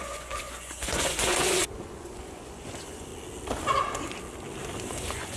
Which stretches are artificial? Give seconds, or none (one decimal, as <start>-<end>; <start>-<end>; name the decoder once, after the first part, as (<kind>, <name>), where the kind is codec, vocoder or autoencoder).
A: 0.0-3.1 (vocoder, Vocos); 4.8-5.4